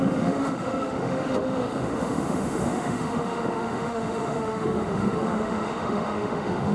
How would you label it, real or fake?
fake